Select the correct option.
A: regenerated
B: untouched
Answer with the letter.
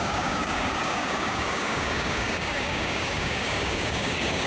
A